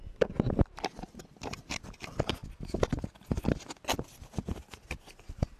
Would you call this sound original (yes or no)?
yes